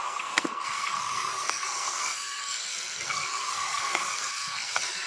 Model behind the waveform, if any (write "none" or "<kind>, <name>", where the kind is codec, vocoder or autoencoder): codec, SNAC